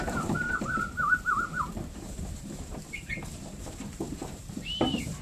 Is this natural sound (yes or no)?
no